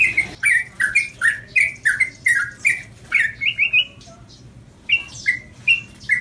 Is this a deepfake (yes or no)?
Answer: no